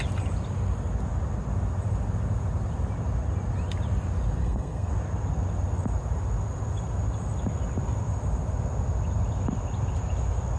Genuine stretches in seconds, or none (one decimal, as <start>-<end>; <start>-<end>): 0.0-4.4; 4.9-10.6